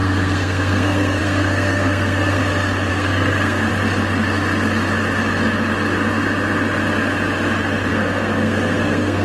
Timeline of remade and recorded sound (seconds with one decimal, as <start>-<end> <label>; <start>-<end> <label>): 0.0-2.4 remade; 2.4-2.9 recorded; 2.9-3.7 remade; 3.7-7.9 recorded; 7.9-9.2 remade